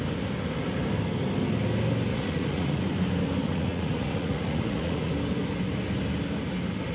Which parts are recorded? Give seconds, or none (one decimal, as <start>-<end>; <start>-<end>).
0.0-2.1; 2.8-3.4; 5.1-6.9